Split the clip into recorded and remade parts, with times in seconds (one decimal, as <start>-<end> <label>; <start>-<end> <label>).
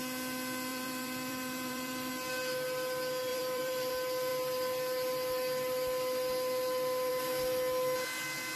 0.0-0.7 recorded; 0.7-2.1 remade; 2.1-3.3 recorded; 3.3-3.9 remade; 3.9-8.6 recorded